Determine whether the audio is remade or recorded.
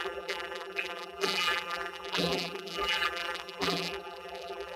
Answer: remade